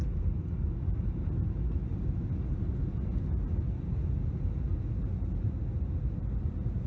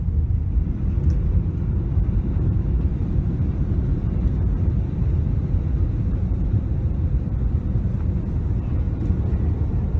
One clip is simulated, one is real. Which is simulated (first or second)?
second